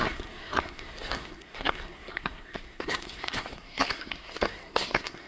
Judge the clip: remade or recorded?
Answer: remade